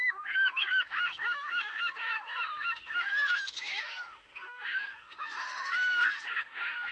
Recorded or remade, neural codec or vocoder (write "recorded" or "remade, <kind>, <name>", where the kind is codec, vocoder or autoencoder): remade, autoencoder, DAC-VAE